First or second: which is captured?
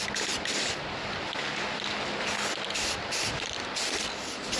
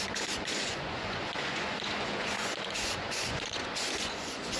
first